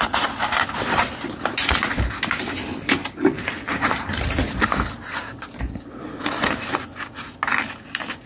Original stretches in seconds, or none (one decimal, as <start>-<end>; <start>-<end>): 0.0-8.3